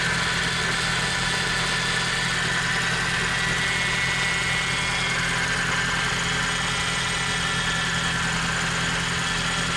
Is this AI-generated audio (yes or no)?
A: no